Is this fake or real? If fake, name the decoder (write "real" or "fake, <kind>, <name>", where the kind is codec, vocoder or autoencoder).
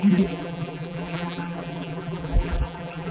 fake, vocoder, BigVGAN v2